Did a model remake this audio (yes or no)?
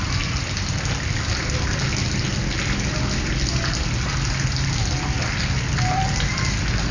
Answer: no